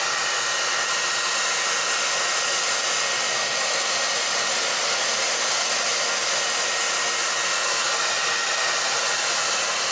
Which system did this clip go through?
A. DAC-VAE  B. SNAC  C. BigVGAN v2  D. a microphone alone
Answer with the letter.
D